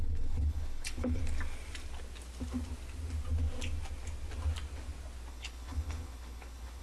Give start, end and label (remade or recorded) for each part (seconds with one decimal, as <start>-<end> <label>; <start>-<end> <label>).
0.0-1.2 remade; 1.2-5.3 recorded; 5.3-6.8 remade